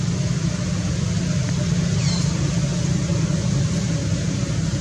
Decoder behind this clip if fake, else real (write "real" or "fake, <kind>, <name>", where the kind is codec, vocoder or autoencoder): real